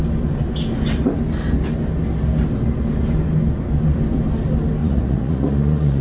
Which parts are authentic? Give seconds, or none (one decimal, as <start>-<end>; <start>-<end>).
0.0-4.8